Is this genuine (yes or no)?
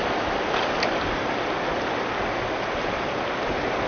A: yes